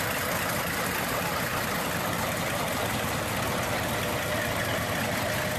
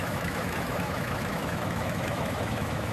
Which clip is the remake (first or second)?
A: second